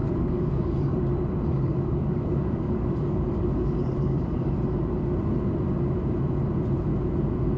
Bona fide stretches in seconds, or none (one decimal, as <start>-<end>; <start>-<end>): 1.0-1.5; 4.5-7.6

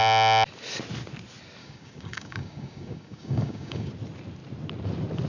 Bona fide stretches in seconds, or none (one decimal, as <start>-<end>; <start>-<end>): 0.0-1.6; 3.9-5.3

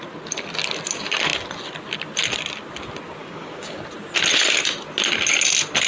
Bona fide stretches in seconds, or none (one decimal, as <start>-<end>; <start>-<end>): 0.0-3.2; 3.8-5.9

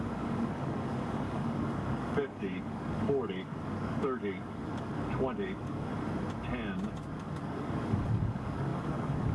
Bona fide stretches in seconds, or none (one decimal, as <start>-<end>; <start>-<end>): 5.9-7.2

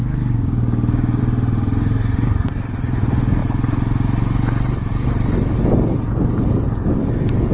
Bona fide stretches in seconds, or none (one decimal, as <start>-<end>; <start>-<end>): 1.2-7.5

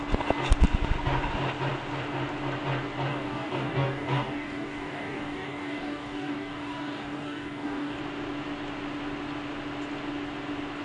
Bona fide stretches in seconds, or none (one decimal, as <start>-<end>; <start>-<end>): 0.0-3.1; 8.0-10.8